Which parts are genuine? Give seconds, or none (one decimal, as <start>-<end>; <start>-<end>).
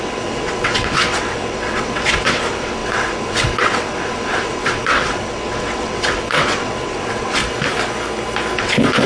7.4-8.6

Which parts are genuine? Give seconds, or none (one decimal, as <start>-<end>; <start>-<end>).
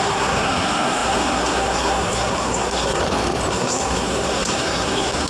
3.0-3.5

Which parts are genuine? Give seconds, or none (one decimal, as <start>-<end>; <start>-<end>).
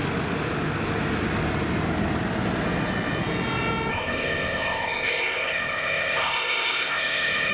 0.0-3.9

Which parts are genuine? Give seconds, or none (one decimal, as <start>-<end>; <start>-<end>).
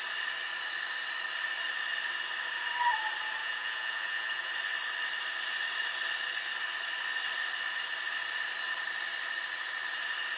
0.0-3.4; 4.5-10.4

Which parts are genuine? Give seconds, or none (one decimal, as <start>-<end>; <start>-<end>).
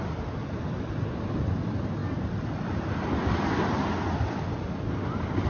0.0-5.5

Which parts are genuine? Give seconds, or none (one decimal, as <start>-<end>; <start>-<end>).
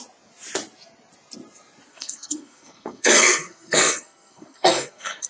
0.0-1.9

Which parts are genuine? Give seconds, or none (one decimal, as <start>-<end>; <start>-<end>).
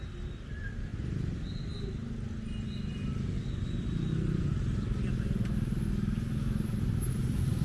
0.0-7.6